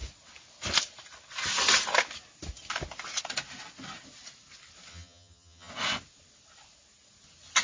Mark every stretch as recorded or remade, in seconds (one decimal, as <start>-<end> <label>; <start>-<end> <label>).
0.0-4.9 recorded; 4.9-5.7 remade; 5.7-7.6 recorded

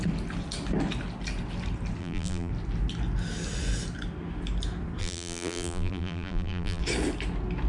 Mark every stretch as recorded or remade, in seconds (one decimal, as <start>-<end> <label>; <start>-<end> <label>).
0.0-2.0 recorded; 2.0-2.5 remade; 2.5-5.0 recorded; 5.0-6.8 remade; 6.8-7.7 recorded

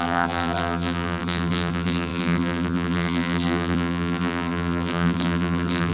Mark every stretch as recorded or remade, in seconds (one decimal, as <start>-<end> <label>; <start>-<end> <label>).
0.0-5.9 remade

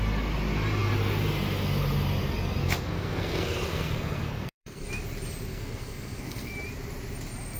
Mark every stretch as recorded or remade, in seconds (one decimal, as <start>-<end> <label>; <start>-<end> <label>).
0.0-2.6 recorded; 2.6-4.9 remade; 4.9-5.5 recorded; 5.5-6.5 remade; 6.5-7.6 recorded